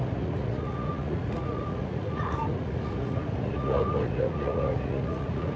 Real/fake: fake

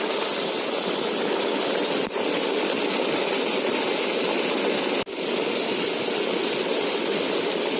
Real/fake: real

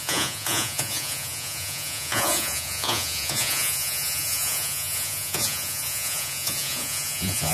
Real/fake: fake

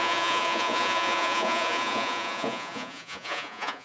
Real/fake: fake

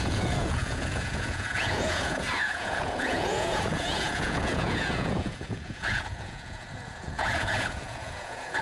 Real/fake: fake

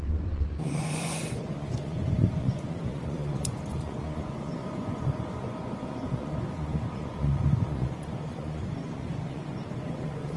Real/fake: fake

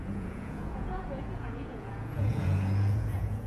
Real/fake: fake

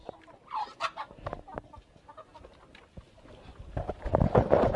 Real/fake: real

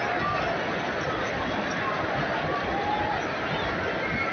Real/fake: real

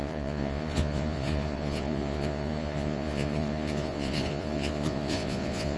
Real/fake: fake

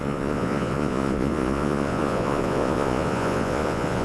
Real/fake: fake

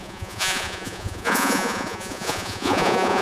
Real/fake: fake